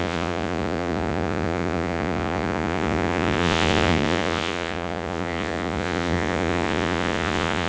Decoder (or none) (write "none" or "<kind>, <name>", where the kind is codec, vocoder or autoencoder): vocoder, Vocos